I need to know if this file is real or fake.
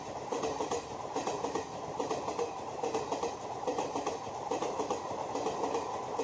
real